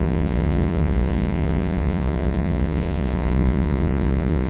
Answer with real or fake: fake